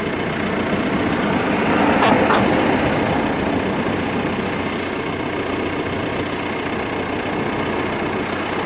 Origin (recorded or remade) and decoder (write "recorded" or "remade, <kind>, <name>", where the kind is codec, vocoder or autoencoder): recorded